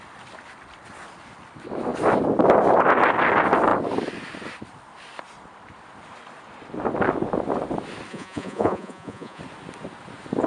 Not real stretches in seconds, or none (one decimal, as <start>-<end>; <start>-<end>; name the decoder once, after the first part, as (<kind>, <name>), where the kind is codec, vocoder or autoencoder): 8.1-9.4 (vocoder, Vocos)